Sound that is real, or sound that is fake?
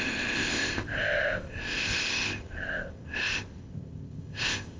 fake